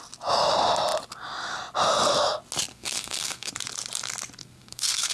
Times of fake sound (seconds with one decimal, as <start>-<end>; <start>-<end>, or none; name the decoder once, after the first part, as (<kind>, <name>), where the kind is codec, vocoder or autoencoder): 2.7-3.5 (codec, SNAC); 4.4-5.1